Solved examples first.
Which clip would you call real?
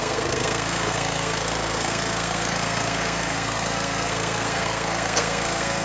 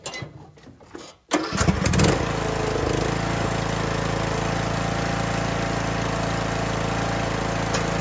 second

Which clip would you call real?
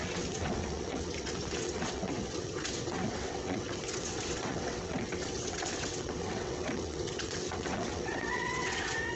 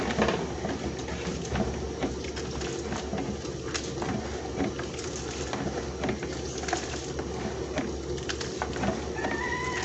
second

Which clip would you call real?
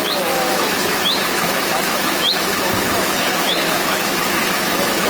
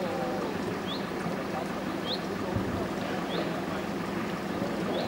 second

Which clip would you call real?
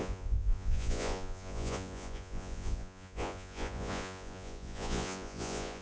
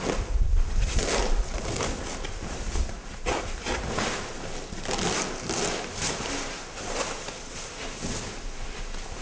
second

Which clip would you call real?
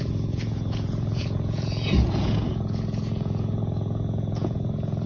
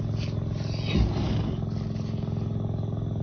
second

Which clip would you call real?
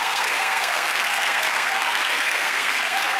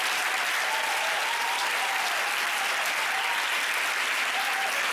second